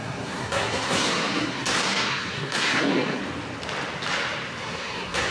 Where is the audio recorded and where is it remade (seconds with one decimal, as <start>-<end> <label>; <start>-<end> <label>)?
0.0-3.2 remade; 3.2-4.6 recorded; 4.6-5.3 remade